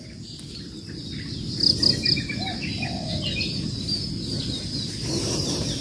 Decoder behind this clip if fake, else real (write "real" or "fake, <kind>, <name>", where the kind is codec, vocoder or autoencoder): real